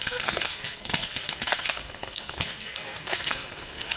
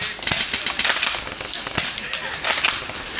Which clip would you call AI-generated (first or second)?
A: first